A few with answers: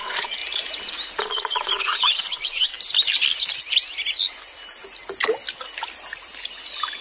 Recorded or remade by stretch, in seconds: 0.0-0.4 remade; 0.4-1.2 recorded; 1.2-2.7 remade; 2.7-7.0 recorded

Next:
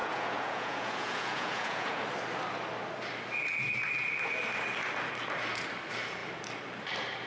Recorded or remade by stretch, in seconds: 0.0-2.0 remade; 2.0-7.3 recorded